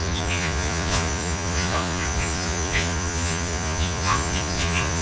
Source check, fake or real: fake